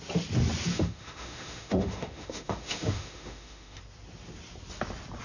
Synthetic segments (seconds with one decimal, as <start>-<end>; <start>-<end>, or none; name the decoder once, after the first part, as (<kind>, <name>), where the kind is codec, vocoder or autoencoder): 0.7-3.8 (autoencoder, DAC-VAE)

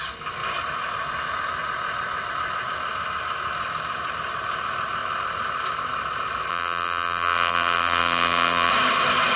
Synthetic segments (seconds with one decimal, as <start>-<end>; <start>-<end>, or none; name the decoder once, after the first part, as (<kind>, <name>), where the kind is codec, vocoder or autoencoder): 6.5-8.7 (vocoder, BigVGAN v2)

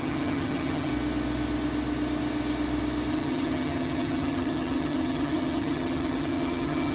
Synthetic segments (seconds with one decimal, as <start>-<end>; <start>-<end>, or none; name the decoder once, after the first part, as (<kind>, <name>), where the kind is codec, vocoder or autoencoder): 0.0-0.9 (vocoder, HiFi-GAN); 3.1-6.9

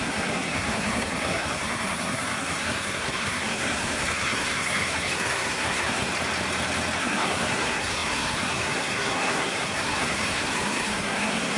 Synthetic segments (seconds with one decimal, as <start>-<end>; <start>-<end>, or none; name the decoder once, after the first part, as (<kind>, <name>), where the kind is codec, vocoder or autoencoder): 0.0-6.1 (codec, SNAC); 7.0-11.6

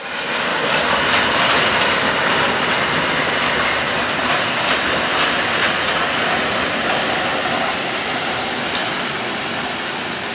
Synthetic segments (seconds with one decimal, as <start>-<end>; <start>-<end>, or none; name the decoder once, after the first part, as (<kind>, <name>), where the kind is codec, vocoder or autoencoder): 5.6-6.5 (vocoder, Vocos)

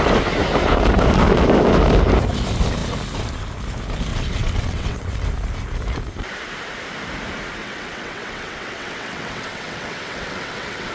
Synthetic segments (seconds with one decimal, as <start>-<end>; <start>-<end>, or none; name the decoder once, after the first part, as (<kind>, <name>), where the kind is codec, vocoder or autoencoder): 4.1-5.1 (vocoder, WaveNeXt); 7.6-10.9

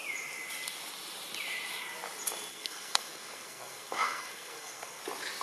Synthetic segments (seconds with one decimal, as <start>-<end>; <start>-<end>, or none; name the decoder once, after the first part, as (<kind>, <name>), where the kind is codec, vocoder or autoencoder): 2.5-5.0 (codec, SNAC)

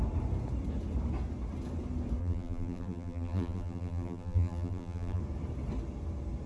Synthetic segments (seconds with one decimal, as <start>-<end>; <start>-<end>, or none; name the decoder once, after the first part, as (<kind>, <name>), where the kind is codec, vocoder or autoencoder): 2.2-5.2 (vocoder, BigVGAN v2)